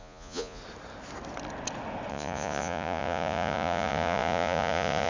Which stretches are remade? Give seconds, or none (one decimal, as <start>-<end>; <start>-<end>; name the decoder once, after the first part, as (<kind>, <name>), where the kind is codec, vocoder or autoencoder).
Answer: 0.0-0.6 (vocoder, Vocos); 2.1-5.1